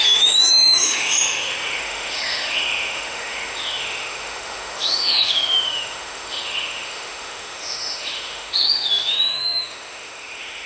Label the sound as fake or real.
fake